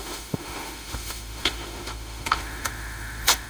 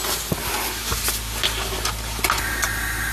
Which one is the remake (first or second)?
first